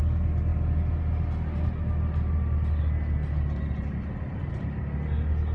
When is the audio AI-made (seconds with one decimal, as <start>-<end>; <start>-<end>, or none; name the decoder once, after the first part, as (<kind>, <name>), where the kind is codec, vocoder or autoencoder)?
none